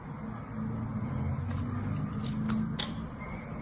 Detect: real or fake real